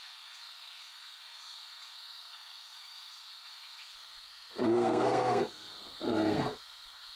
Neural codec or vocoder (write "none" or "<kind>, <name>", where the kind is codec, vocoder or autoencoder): codec, SNAC